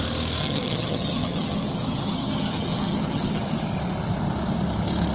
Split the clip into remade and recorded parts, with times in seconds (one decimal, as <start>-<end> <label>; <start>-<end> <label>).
0.0-0.4 recorded; 0.4-3.5 remade; 3.5-5.1 recorded